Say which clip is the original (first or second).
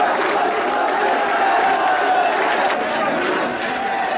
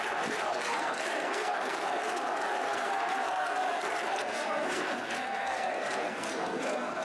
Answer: first